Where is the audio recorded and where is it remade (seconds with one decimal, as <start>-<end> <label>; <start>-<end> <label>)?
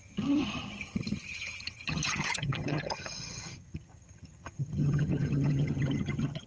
0.0-6.5 remade